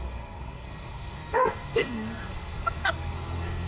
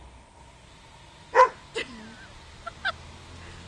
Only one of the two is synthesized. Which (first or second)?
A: first